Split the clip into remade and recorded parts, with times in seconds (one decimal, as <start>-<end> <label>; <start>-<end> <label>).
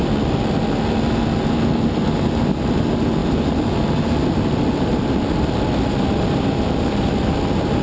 0.0-7.8 recorded